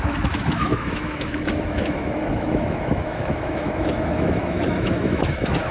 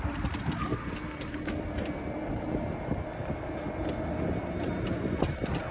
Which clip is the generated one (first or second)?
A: first